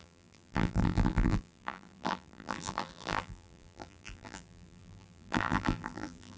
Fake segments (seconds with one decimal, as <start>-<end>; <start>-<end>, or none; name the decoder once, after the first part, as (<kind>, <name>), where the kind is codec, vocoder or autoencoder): 0.0-6.4 (vocoder, BigVGAN v2)